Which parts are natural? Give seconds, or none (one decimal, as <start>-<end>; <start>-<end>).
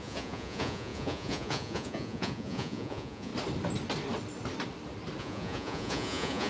3.3-5.2